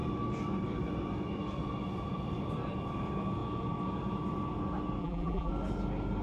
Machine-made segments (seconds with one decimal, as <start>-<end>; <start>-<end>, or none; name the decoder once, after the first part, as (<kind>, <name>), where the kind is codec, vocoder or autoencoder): 5.0-5.5 (vocoder, BigVGAN v2)